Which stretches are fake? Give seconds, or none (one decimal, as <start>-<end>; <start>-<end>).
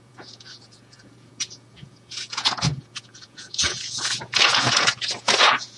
0.0-5.8